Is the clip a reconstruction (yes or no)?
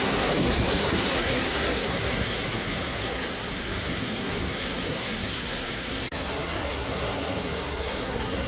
yes